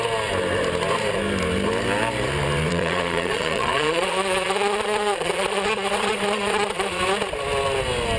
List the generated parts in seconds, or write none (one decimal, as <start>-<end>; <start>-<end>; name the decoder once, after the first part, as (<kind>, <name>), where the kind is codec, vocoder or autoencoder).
2.7-7.0 (vocoder, Vocos)